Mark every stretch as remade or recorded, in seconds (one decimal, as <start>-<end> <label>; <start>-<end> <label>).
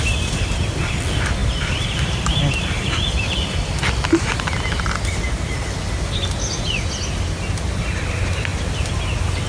0.0-1.4 recorded; 1.4-2.9 remade; 2.9-8.5 recorded; 8.5-9.0 remade; 9.0-9.5 recorded